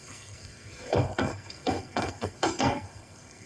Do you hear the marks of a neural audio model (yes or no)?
yes